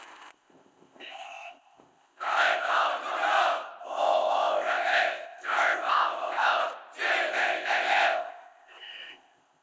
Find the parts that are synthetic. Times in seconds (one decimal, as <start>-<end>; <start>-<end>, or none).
0.0-2.9; 3.8-6.6; 7.3-9.6